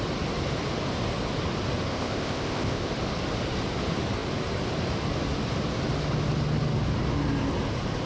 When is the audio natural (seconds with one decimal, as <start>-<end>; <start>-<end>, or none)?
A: 0.0-1.9; 2.9-8.1